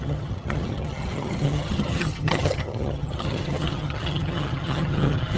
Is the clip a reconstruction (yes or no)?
yes